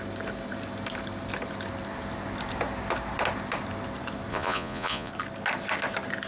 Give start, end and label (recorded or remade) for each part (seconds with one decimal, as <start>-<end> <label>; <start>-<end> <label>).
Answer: 0.0-4.3 recorded; 4.3-5.1 remade; 5.1-6.3 recorded